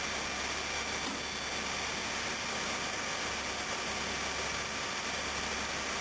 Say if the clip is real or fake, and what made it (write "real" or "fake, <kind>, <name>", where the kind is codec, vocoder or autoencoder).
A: real